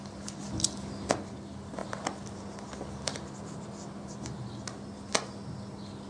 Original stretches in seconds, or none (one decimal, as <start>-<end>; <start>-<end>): 0.0-6.1